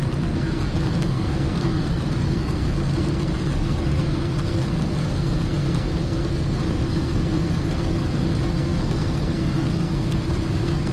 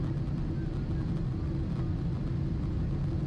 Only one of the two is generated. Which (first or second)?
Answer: first